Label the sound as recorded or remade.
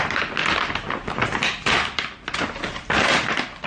recorded